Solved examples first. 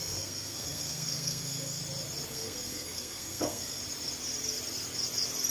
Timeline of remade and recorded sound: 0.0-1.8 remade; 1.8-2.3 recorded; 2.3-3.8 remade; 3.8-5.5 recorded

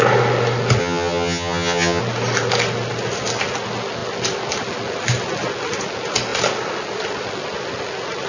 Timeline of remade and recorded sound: 0.0-0.8 recorded; 0.8-2.0 remade; 2.0-8.3 recorded

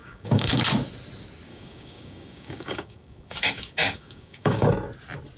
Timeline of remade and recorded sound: 0.0-0.6 remade; 0.6-1.5 recorded; 1.5-4.7 remade; 4.7-5.4 recorded